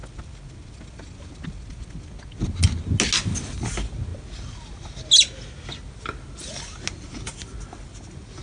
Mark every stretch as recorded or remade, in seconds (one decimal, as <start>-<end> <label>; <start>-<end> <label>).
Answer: 0.0-8.4 recorded